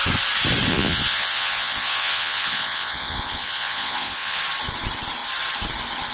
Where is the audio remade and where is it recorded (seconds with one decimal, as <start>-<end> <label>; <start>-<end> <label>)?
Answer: 0.0-0.7 recorded; 0.7-4.4 remade; 4.4-6.1 recorded